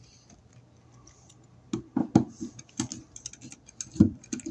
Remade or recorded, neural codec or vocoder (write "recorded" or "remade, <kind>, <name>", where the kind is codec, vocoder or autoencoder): recorded